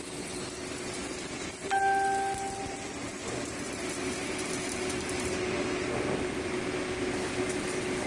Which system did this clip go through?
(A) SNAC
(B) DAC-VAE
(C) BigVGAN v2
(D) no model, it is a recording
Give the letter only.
D